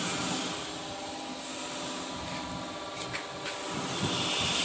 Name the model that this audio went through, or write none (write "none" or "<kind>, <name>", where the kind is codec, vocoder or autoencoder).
none